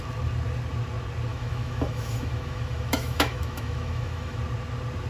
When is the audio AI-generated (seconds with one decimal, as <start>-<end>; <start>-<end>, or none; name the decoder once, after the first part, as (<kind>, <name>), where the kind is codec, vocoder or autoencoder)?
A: 1.3-4.4 (autoencoder, DAC-VAE)